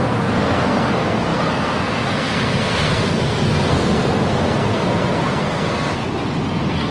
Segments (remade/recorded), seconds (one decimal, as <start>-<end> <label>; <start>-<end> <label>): 0.0-6.0 remade; 6.0-6.5 recorded; 6.5-6.9 remade